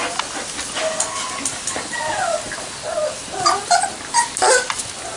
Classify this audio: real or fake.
real